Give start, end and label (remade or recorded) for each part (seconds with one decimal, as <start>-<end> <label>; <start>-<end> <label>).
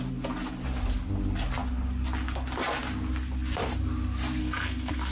0.0-4.4 recorded; 4.4-5.1 remade